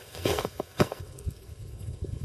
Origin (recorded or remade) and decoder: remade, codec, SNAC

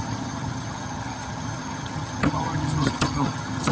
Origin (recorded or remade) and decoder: remade, vocoder, HiFi-GAN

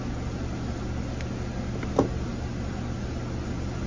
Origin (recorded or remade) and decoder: recorded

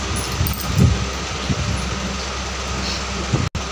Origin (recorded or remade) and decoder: recorded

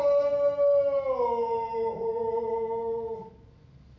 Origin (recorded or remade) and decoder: recorded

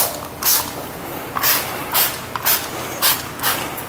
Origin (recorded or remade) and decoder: recorded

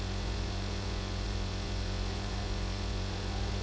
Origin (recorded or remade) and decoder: remade, vocoder, Vocos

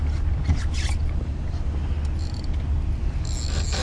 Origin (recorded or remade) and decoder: recorded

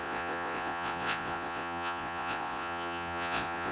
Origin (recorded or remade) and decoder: remade, vocoder, Vocos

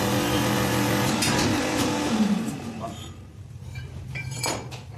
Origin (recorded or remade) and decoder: remade, vocoder, BigVGAN v2